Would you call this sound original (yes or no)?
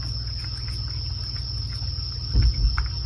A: yes